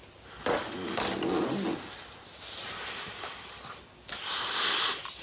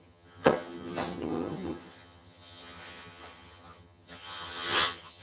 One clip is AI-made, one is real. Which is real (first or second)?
first